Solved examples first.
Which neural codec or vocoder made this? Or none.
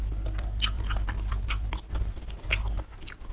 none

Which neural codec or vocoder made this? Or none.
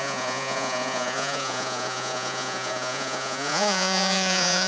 vocoder, Vocos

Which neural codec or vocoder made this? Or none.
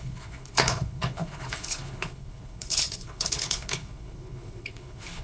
codec, HILCodec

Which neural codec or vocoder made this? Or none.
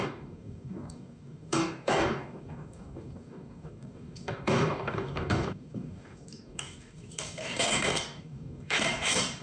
codec, DAC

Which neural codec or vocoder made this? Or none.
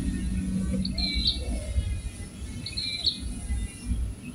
none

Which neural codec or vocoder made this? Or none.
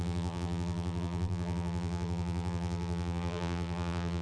vocoder, BigVGAN v2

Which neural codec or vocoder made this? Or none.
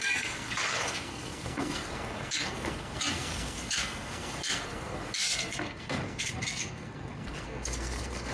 codec, SNAC